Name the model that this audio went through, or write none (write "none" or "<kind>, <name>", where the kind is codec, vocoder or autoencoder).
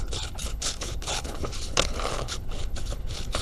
codec, HILCodec